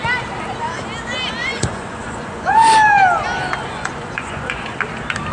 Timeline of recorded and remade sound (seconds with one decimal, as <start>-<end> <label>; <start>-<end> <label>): 0.0-1.4 recorded; 1.4-2.7 remade; 2.7-3.6 recorded; 3.6-4.8 remade; 4.8-5.3 recorded